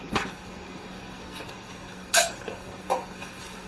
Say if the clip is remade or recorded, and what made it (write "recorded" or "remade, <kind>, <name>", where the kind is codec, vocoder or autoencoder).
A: remade, codec, SNAC